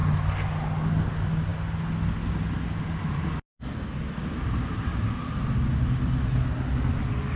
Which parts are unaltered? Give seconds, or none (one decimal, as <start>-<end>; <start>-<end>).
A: 0.0-7.4